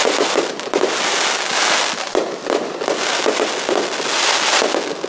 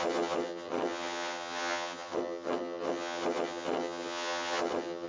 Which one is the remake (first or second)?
second